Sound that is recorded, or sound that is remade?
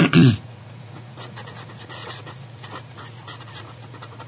remade